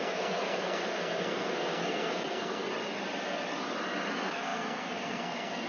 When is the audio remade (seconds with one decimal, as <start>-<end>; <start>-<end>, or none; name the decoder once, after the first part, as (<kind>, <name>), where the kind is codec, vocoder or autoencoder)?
0.0-2.6 (codec, SNAC); 4.1-5.7